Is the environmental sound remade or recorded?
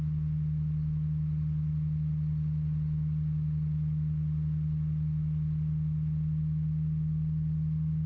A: recorded